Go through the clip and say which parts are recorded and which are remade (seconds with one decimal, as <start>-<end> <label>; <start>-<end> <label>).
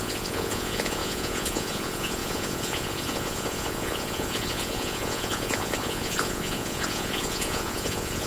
0.0-8.3 remade